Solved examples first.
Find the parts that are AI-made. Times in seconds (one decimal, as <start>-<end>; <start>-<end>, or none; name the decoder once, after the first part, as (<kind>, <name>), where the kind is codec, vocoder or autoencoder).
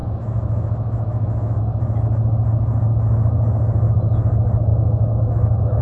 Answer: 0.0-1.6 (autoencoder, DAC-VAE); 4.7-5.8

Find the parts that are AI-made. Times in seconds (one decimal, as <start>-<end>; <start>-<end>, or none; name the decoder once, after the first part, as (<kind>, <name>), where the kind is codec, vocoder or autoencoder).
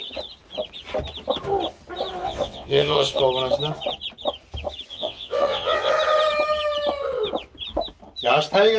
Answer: 2.2-3.2 (vocoder, WaveNeXt); 4.9-5.9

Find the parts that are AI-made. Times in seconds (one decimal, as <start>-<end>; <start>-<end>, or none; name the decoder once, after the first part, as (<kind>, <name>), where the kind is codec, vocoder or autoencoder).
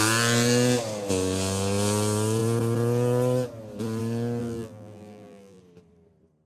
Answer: 4.4-5.6 (vocoder, BigVGAN v2)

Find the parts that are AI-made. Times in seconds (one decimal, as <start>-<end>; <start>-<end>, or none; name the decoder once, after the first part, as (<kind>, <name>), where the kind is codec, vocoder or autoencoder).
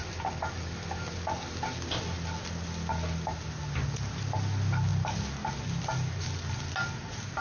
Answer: none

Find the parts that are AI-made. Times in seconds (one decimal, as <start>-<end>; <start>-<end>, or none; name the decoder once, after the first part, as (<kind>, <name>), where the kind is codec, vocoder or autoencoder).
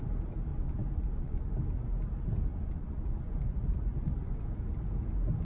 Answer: 0.5-1.5 (vocoder, Vocos); 2.5-4.4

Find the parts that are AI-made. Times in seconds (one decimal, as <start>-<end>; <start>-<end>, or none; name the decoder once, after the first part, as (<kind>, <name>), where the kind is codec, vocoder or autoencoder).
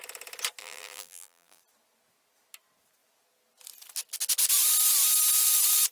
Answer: 0.6-1.6 (vocoder, BigVGAN v2)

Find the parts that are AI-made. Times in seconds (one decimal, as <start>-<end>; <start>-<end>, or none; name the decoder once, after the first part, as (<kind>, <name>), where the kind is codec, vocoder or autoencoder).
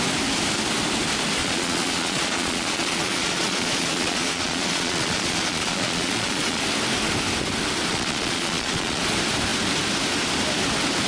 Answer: 1.4-6.6 (vocoder, Vocos); 7.9-9.0